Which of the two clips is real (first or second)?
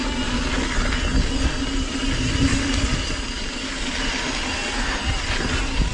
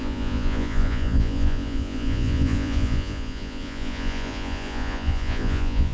first